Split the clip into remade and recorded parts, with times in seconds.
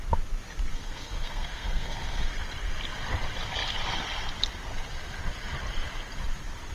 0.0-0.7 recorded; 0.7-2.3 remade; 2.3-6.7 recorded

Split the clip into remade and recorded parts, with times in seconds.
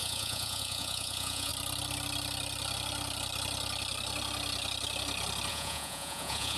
0.0-1.5 remade; 1.5-5.5 recorded; 5.5-6.6 remade